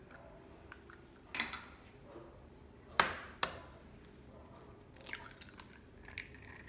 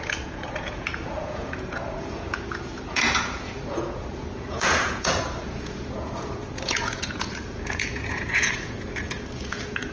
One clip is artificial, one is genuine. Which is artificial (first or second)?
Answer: second